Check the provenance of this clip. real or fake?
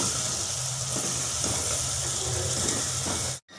real